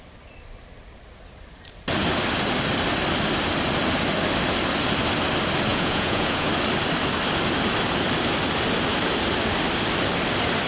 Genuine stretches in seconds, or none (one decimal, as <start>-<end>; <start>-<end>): 0.0-5.7; 6.5-10.7